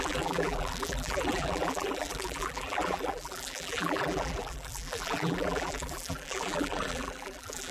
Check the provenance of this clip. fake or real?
fake